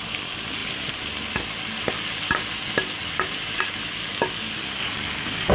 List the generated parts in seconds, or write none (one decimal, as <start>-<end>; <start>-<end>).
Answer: 4.8-5.5